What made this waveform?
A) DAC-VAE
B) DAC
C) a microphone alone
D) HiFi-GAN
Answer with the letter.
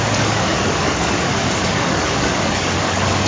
B